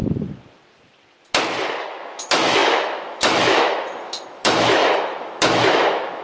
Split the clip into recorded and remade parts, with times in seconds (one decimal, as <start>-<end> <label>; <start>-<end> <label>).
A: 0.0-1.9 recorded; 1.9-6.2 remade